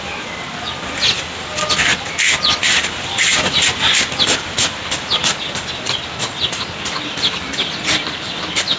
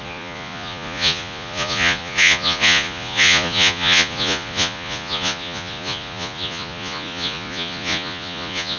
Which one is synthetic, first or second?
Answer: second